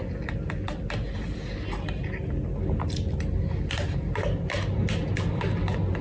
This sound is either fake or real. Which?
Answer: real